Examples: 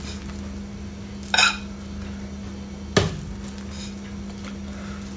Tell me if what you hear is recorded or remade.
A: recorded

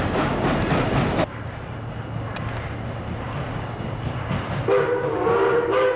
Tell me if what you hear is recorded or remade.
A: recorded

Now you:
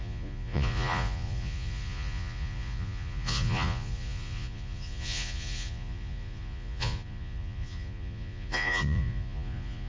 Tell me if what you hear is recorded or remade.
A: remade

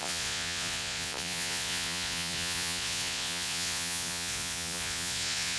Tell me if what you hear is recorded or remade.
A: remade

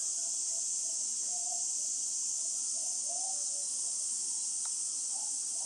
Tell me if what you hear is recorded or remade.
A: recorded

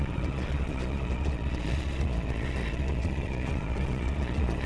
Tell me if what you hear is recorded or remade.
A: remade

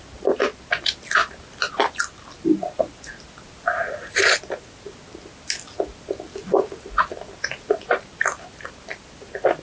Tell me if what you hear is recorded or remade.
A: recorded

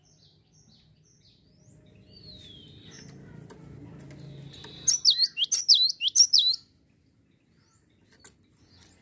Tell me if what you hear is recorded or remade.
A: recorded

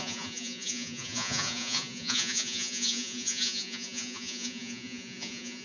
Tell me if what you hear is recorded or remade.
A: remade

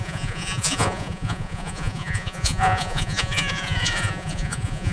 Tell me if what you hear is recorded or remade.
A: remade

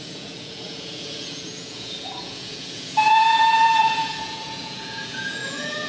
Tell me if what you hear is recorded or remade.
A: remade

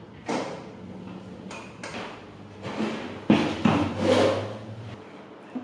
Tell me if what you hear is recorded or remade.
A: recorded